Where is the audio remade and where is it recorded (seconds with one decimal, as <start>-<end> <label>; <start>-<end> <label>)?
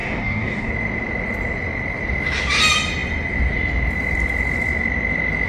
0.0-0.7 remade; 0.7-5.5 recorded